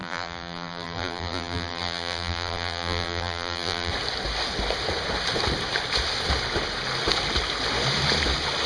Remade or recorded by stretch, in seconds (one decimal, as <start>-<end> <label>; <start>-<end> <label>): 0.0-3.9 remade; 3.9-8.7 recorded